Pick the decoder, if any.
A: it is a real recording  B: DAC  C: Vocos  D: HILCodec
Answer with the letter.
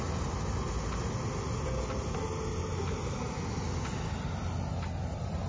A